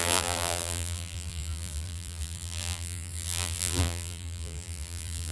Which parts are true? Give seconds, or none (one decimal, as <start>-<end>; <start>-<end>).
none